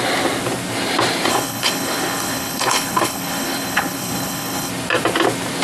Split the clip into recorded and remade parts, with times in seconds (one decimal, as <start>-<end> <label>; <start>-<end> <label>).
0.0-1.3 recorded; 1.3-4.7 remade; 4.7-5.6 recorded